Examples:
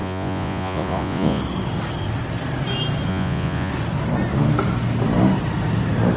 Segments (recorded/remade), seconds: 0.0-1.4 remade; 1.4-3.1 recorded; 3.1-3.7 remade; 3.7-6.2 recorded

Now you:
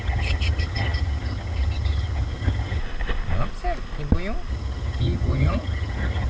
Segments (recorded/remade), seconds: 0.0-2.8 remade; 2.8-4.5 recorded; 4.5-6.3 remade

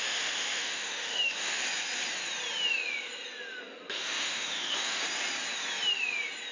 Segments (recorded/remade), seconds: 0.0-1.6 remade; 1.6-3.9 recorded; 3.9-5.0 remade; 5.0-6.5 recorded

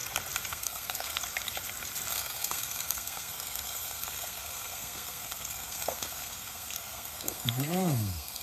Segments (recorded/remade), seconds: 0.0-0.5 recorded; 0.5-1.2 remade; 1.2-2.1 recorded; 2.1-8.4 remade

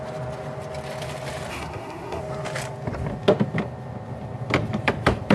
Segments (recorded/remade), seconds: 0.0-1.5 recorded; 1.5-2.2 remade; 2.2-5.3 recorded